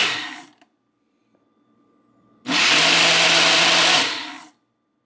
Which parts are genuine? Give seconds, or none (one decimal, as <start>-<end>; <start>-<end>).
none